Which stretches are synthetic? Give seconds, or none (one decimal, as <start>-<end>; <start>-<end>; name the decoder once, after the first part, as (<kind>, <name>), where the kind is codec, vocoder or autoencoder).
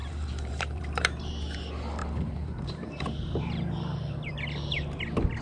0.0-1.3 (vocoder, BigVGAN v2); 2.0-4.3